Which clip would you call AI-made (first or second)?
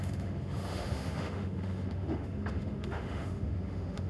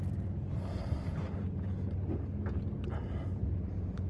first